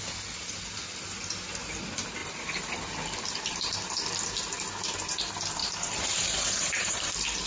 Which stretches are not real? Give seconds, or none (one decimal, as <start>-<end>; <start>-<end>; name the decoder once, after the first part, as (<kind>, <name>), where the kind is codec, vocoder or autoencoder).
2.2-2.9 (vocoder, BigVGAN v2); 5.6-7.5